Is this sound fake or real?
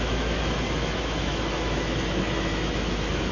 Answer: fake